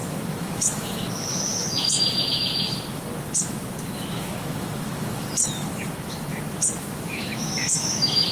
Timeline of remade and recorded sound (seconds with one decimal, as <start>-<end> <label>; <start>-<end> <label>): 0.0-8.3 remade